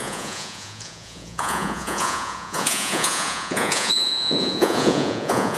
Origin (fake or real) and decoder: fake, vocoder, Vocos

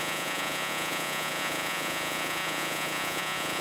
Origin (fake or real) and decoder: fake, vocoder, Vocos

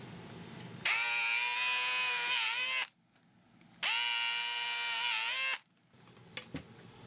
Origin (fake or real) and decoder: real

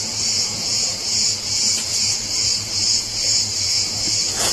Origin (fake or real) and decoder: fake, vocoder, Vocos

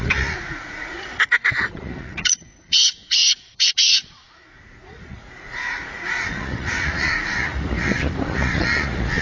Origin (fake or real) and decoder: fake, vocoder, Vocos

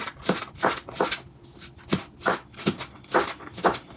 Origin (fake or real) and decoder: real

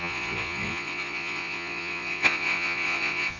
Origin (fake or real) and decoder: fake, vocoder, Vocos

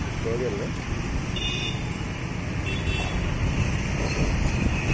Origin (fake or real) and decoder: real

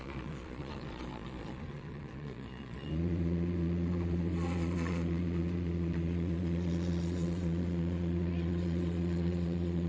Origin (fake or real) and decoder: fake, vocoder, Vocos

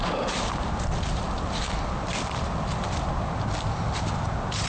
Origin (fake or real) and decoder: real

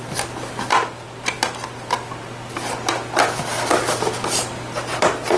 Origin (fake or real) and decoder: real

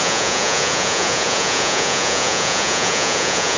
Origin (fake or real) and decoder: fake, vocoder, Vocos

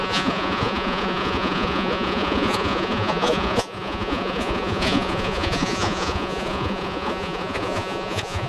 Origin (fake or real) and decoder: fake, vocoder, Vocos